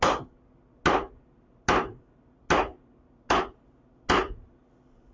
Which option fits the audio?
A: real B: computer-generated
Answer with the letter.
A